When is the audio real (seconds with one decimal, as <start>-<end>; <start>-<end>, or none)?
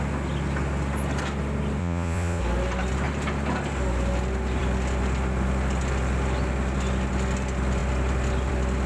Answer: 0.0-1.8; 2.4-8.9